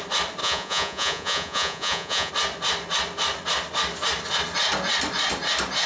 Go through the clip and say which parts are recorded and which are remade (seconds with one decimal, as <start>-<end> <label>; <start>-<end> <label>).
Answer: 0.0-0.4 recorded; 0.4-2.3 remade; 2.3-5.9 recorded